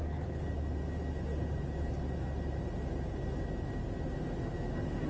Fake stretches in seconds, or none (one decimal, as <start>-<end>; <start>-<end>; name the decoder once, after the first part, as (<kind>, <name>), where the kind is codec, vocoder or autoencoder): none